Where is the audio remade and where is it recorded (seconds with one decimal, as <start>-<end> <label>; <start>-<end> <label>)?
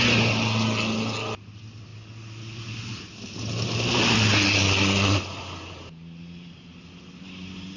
0.0-7.8 recorded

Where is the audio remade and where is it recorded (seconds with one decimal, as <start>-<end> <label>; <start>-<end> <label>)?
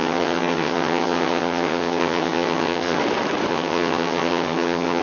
0.0-3.0 remade; 3.0-3.5 recorded; 3.5-5.0 remade